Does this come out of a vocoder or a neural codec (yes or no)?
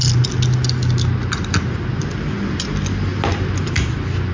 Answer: no